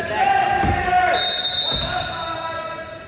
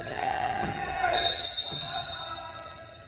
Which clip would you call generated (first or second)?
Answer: second